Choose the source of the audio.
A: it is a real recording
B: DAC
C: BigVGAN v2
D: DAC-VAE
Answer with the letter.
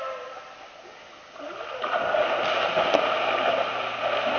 A